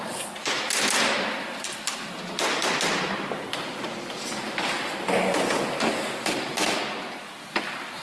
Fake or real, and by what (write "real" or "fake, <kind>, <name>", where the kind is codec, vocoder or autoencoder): real